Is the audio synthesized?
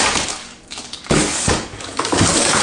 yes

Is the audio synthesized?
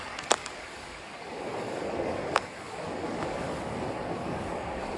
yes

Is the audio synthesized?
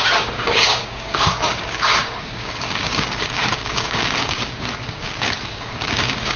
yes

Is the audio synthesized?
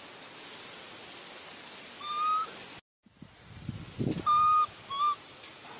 no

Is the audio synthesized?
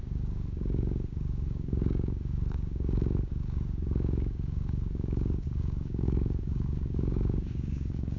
yes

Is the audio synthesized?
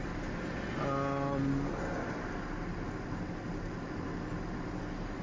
no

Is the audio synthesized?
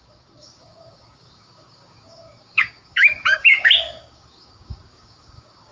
yes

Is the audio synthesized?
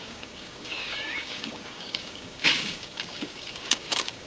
yes